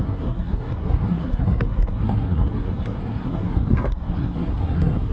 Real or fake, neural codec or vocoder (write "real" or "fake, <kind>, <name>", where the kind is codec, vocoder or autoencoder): fake, codec, SNAC